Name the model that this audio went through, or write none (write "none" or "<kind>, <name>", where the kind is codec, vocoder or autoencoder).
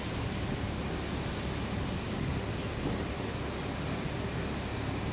none